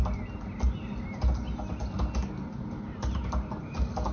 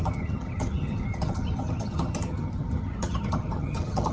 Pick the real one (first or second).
first